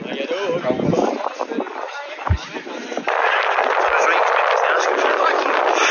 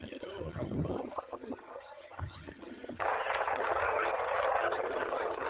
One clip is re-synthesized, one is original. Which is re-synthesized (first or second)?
second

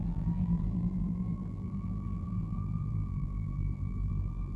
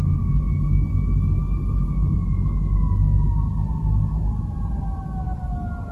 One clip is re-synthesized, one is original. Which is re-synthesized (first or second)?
first